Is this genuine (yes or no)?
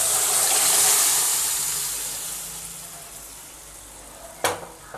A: yes